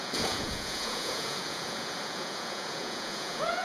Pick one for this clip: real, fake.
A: fake